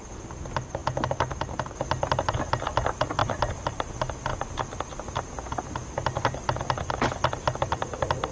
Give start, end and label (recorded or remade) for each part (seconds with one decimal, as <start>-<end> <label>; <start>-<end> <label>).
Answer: 0.0-3.2 recorded; 3.2-3.9 remade; 3.9-8.3 recorded